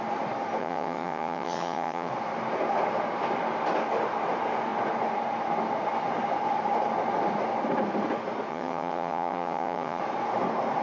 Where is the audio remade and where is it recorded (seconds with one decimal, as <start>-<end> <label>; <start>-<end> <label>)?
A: 0.0-0.6 recorded; 0.6-2.1 remade; 2.1-8.5 recorded; 8.5-10.0 remade; 10.0-10.8 recorded